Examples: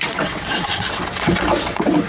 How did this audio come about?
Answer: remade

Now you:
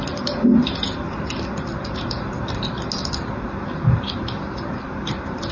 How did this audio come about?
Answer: recorded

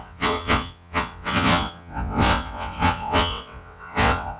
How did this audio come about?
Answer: remade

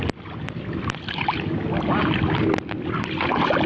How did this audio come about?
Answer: recorded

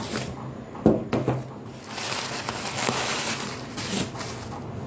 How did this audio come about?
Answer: recorded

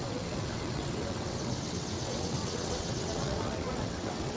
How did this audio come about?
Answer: remade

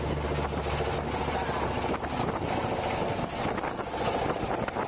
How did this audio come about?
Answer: recorded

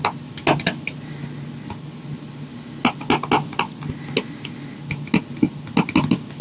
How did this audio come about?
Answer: recorded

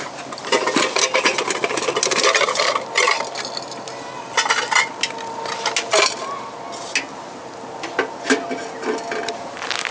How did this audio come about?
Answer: recorded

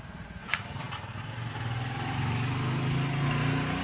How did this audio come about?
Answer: recorded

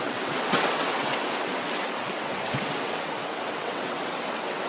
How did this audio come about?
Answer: remade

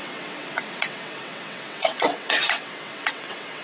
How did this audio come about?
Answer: remade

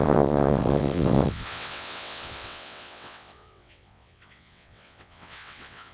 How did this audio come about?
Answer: remade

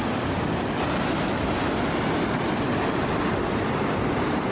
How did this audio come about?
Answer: recorded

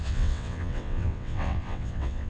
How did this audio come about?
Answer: remade